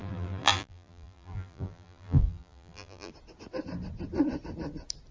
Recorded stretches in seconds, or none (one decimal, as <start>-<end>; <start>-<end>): 3.1-5.1